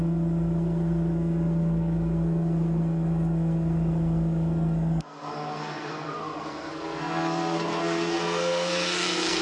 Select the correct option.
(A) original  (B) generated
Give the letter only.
B